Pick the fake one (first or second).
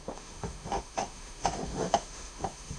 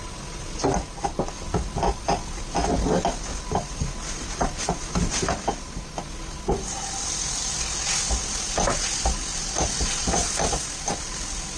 first